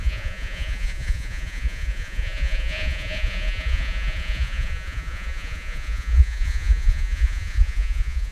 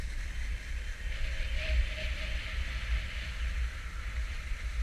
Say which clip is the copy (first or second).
first